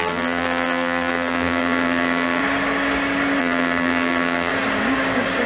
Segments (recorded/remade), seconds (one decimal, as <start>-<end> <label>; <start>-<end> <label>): 0.0-2.4 remade; 2.4-3.4 recorded; 3.4-4.5 remade; 4.5-5.5 recorded